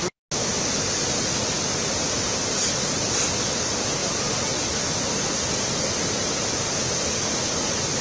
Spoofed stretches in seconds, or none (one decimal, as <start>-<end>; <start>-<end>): none